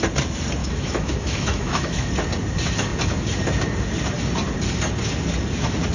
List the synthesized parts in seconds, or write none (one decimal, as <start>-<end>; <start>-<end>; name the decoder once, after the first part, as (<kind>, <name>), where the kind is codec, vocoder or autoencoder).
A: 0.6-2.1 (autoencoder, DAC-VAE)